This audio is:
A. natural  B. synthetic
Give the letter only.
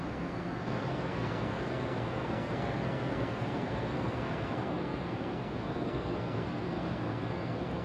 B